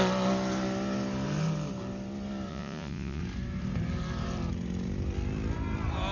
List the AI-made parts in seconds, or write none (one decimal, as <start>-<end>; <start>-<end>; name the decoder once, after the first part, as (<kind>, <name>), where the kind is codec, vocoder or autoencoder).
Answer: 2.5-3.2 (vocoder, Vocos)